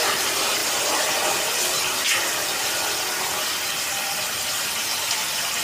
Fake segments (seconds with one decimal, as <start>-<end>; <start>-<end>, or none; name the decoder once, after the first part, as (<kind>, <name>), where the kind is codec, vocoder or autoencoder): none